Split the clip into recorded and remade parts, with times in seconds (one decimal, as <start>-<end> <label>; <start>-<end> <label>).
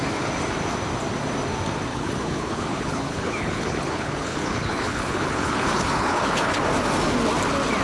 0.0-1.9 recorded; 1.9-6.6 remade; 6.6-7.8 recorded